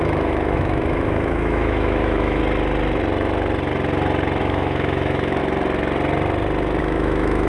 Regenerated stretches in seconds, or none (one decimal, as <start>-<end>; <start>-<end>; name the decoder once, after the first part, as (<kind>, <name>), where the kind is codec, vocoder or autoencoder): 0.0-2.4 (autoencoder, DAC-VAE); 4.4-5.4; 6.8-7.5

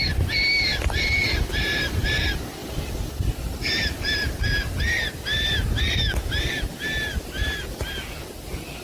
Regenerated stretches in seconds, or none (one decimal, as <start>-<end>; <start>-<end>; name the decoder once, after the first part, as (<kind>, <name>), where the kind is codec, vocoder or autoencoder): none

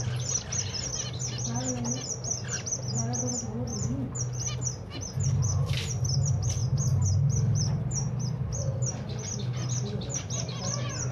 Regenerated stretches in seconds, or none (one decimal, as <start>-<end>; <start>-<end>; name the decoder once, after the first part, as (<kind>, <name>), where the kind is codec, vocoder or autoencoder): none

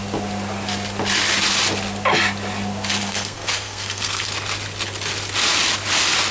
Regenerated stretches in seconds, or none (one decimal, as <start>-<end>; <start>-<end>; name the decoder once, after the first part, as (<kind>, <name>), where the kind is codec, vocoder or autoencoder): 3.0-4.3 (codec, SNAC)

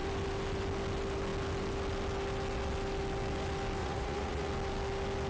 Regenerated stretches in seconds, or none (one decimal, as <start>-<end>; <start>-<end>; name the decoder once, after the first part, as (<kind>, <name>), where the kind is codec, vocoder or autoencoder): 3.8-4.5 (vocoder, Vocos)

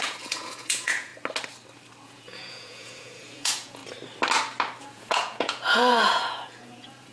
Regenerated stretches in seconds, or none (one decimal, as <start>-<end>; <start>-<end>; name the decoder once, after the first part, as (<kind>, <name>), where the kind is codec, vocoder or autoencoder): 0.0-1.1 (vocoder, Vocos); 2.0-3.8; 4.8-7.1

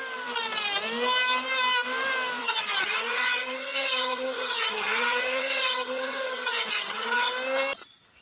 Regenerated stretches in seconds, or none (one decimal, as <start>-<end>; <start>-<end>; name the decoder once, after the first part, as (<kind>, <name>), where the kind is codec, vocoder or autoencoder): 2.4-7.3 (vocoder, HiFi-GAN)

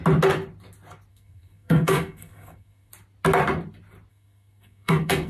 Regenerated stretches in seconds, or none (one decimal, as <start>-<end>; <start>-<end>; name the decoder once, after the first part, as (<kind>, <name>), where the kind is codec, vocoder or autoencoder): 1.1-2.9 (codec, SNAC); 4.1-5.3